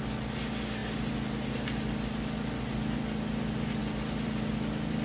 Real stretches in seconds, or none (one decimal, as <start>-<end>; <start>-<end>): 0.0-5.0